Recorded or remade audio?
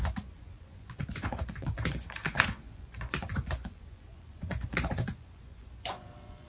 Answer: remade